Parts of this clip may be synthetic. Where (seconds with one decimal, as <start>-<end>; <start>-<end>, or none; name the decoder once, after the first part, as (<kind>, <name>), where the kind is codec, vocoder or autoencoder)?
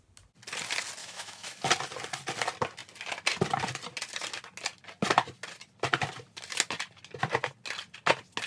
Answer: 1.0-1.6 (autoencoder, DAC-VAE)